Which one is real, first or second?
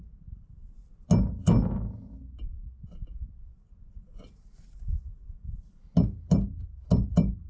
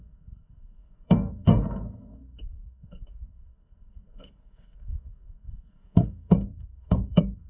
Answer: first